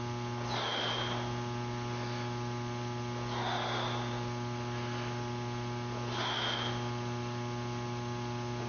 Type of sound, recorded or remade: recorded